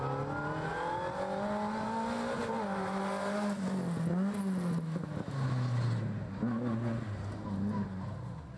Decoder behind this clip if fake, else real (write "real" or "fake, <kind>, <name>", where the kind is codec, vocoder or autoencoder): real